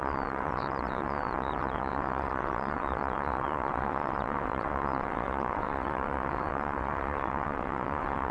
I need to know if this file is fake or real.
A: fake